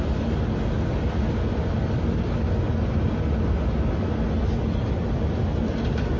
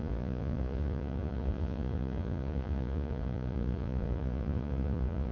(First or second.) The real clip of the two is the first